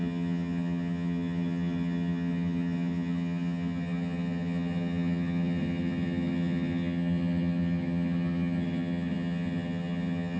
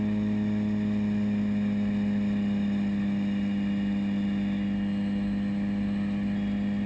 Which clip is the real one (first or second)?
second